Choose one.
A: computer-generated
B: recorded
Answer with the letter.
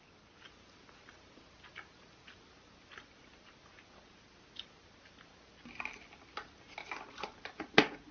B